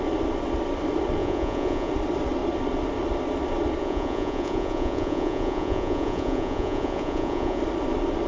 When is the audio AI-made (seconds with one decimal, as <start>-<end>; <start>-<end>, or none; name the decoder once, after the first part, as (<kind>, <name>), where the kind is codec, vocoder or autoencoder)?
1.2-1.9 (vocoder, Vocos); 3.8-7.6